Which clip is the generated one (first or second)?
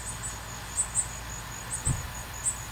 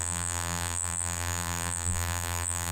second